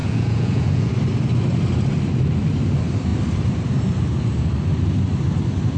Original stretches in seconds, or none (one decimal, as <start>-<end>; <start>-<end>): 0.9-5.8